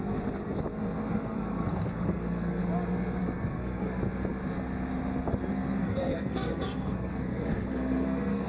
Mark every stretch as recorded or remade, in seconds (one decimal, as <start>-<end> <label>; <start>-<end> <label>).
0.0-1.2 recorded; 1.2-2.6 remade; 2.6-3.2 recorded; 3.2-4.0 remade; 4.0-5.8 recorded; 5.8-8.5 remade